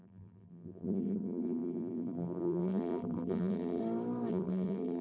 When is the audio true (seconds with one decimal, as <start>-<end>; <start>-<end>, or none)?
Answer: 3.8-4.3